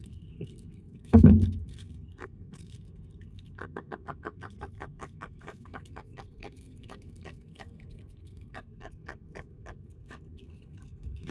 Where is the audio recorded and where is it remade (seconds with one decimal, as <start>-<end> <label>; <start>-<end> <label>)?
0.0-11.3 remade